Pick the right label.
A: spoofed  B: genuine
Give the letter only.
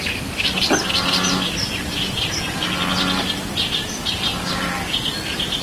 B